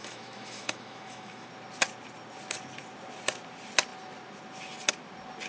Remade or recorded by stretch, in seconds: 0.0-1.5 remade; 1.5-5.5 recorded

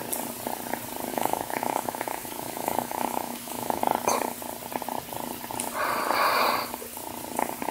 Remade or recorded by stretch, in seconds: 0.0-1.1 recorded; 1.1-3.8 remade; 3.8-7.7 recorded

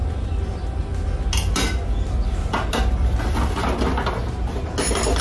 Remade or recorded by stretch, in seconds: 0.0-5.2 recorded